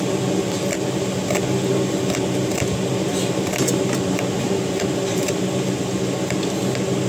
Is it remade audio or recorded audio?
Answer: recorded